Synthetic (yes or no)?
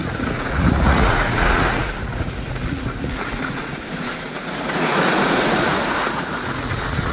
yes